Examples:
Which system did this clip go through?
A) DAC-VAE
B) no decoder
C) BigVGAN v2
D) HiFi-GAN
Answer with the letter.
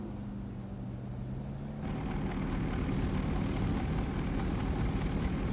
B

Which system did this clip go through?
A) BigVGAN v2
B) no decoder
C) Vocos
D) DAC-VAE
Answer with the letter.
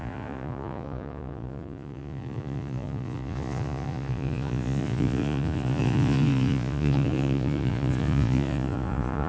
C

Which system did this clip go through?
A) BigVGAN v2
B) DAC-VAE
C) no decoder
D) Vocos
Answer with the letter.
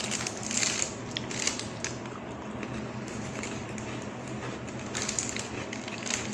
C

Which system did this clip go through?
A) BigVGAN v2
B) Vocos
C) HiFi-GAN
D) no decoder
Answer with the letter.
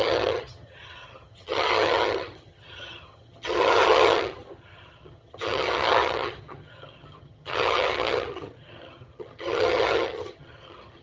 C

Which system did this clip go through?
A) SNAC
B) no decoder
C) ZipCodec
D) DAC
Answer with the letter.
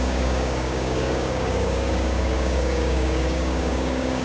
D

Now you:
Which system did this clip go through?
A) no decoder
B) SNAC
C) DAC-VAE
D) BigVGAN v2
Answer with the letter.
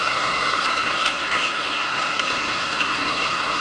B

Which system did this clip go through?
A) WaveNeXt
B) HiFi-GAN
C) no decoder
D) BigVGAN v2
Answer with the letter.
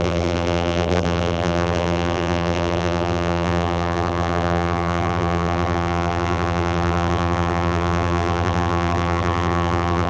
D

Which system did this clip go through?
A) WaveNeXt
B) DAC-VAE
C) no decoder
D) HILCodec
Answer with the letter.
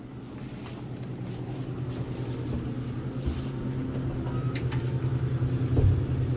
C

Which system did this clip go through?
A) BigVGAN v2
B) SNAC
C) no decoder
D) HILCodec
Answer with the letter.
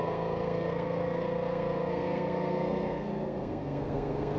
B